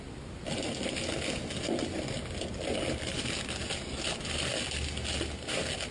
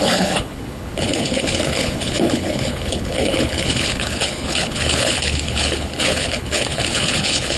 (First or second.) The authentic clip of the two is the first